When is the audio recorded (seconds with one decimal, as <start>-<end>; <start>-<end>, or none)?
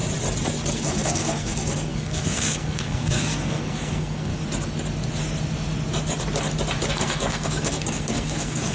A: 0.0-0.7; 4.3-6.9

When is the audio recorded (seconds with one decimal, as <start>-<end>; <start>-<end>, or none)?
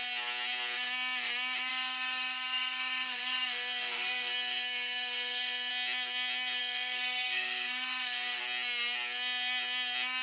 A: 0.0-1.7; 5.7-6.6; 8.4-10.2